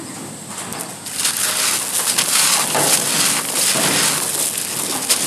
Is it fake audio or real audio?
real